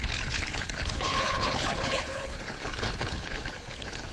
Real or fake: fake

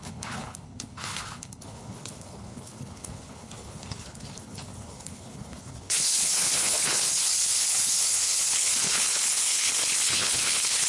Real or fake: fake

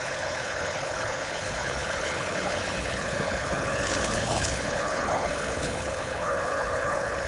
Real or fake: fake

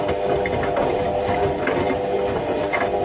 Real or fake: real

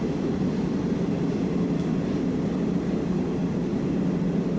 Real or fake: real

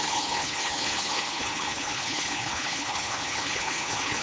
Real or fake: fake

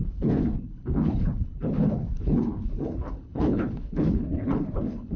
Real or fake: fake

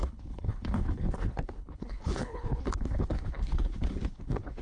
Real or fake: fake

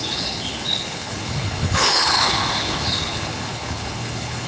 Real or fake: fake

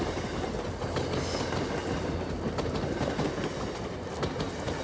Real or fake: real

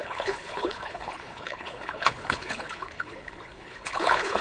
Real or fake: fake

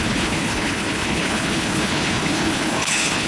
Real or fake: fake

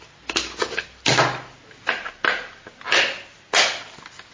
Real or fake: real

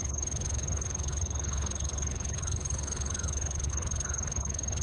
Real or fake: fake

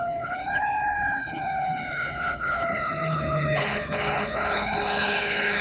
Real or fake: fake